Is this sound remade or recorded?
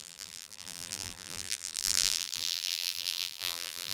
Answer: remade